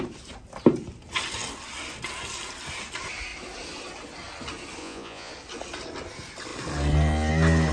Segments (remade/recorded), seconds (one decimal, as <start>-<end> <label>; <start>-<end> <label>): 0.0-4.8 recorded; 4.8-5.3 remade; 5.3-7.7 recorded